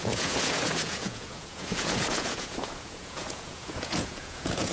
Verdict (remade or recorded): remade